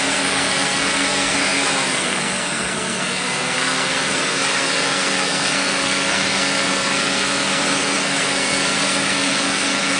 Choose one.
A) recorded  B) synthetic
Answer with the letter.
B